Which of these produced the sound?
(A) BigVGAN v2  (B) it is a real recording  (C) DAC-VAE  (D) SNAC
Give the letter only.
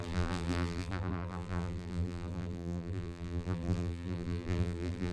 A